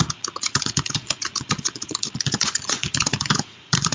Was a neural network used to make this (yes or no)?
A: yes